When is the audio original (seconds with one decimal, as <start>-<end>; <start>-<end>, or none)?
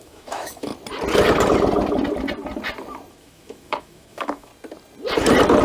0.7-3.1; 4.5-5.6